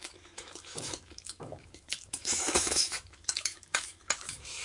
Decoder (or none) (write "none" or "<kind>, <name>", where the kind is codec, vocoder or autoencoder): autoencoder, DAC-VAE